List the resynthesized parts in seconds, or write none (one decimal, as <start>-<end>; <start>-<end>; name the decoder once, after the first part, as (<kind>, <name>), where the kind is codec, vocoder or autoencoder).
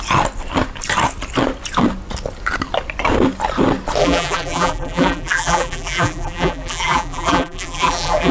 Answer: 4.0-8.3 (vocoder, BigVGAN v2)